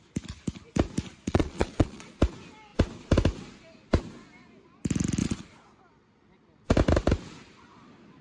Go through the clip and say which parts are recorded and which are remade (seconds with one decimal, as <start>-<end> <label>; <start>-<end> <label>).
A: 0.0-1.1 recorded; 1.1-2.2 remade; 2.2-5.2 recorded; 5.2-5.8 remade; 5.8-8.2 recorded